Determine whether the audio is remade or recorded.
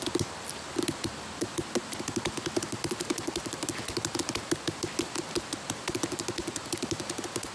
recorded